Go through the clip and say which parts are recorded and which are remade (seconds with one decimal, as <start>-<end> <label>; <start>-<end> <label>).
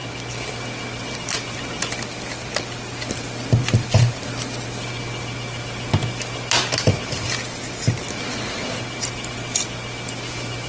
0.0-10.7 recorded